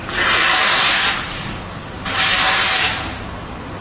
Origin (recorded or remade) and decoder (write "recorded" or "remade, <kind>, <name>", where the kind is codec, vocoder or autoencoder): remade, vocoder, BigVGAN v2